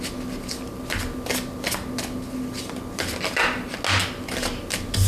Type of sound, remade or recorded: recorded